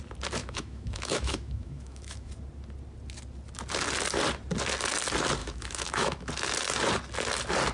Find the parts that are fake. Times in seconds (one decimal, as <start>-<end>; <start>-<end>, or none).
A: 0.4-2.3; 5.4-6.3